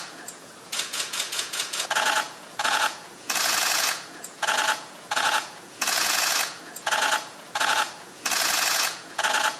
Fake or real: fake